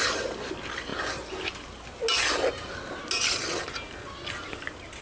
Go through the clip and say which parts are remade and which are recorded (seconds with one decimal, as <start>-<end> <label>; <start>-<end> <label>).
0.0-5.0 recorded

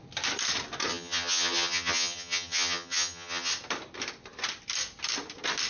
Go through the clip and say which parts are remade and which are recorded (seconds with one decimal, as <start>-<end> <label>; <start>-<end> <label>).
0.0-0.9 recorded; 0.9-3.5 remade; 3.5-5.7 recorded